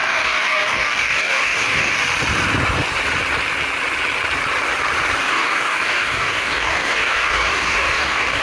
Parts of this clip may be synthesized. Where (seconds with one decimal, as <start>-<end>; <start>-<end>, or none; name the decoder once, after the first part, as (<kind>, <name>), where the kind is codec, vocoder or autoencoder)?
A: 0.0-2.0 (codec, DAC); 5.2-8.4